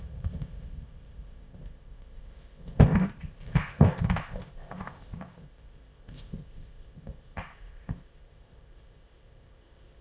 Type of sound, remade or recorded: remade